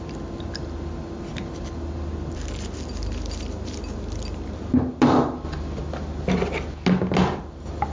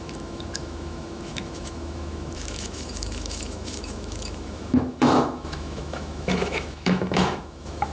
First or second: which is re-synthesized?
second